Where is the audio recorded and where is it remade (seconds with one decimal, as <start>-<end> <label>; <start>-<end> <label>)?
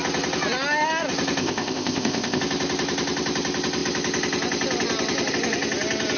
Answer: 0.0-1.4 recorded; 1.4-2.4 remade; 2.4-6.2 recorded